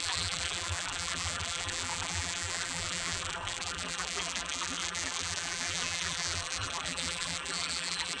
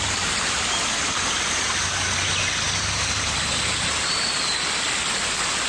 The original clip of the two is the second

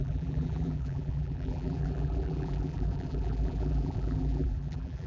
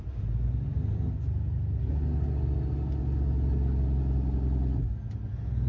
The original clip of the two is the second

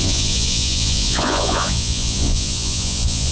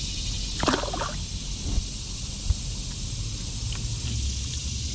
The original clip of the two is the second